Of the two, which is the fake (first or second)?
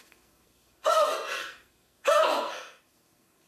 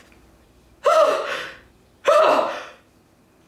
first